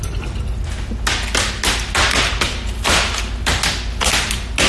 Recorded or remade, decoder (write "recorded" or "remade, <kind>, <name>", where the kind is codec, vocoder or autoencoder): recorded